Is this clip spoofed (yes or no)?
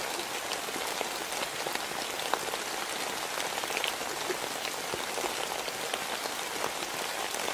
no